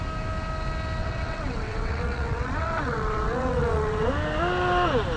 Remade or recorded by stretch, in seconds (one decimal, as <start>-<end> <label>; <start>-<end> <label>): 0.0-1.0 recorded; 1.0-4.1 remade; 4.1-5.2 recorded